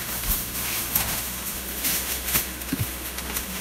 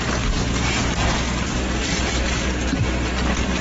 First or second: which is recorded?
second